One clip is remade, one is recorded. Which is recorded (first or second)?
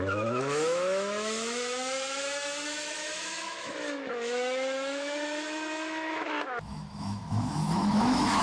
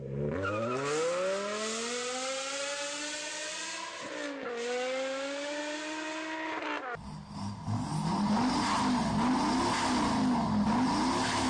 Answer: second